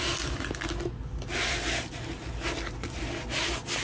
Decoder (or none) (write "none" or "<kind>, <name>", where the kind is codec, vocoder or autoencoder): none